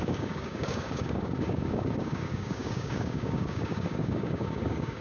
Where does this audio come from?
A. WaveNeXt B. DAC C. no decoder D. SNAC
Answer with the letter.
B